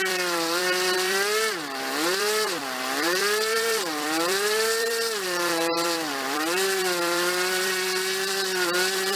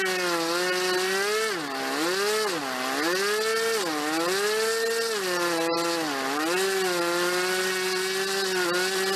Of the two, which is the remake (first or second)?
first